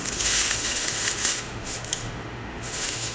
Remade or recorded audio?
remade